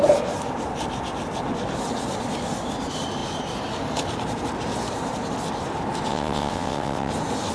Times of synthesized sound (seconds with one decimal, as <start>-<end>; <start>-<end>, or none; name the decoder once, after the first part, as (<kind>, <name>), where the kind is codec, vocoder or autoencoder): 6.1-7.1 (vocoder, WaveNeXt)